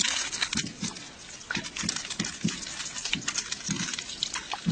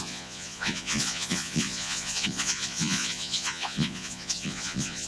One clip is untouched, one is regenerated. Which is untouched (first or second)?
first